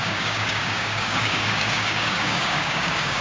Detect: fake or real fake